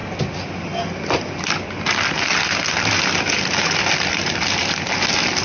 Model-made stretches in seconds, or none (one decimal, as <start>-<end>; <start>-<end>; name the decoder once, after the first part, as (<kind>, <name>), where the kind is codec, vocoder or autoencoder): none